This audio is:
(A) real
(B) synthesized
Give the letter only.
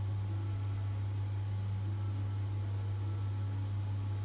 A